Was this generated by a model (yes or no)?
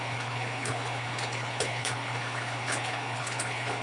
yes